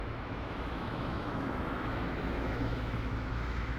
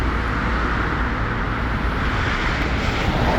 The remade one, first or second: first